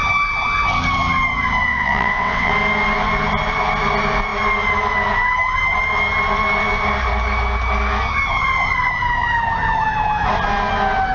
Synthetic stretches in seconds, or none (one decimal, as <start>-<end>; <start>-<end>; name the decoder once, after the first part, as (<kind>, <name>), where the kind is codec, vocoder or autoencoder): 1.7-2.5 (vocoder, WaveNeXt)